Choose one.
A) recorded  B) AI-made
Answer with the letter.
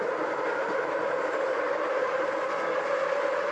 A